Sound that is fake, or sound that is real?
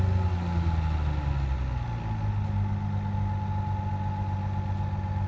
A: real